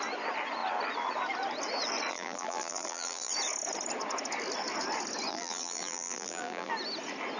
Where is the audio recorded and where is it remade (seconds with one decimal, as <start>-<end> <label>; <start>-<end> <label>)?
0.0-2.1 recorded; 2.1-3.3 remade; 3.3-5.3 recorded; 5.3-6.7 remade; 6.7-7.4 recorded